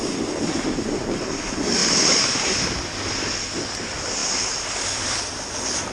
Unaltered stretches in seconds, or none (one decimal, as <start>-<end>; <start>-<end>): 0.0-4.2; 5.2-5.9